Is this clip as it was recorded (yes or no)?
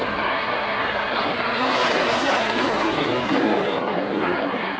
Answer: no